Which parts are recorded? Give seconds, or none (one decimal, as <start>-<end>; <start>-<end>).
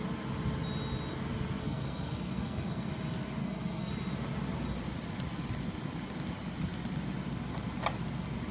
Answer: 0.0-1.6; 2.9-3.4; 3.9-8.5